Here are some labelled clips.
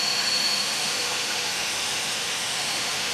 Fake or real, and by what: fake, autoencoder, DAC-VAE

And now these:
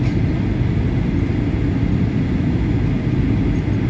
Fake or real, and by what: real